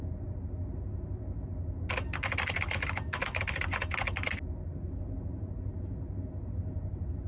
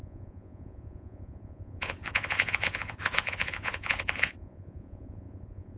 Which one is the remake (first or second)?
second